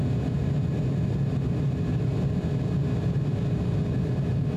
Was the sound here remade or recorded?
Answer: recorded